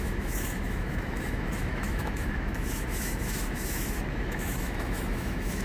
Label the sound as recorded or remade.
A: remade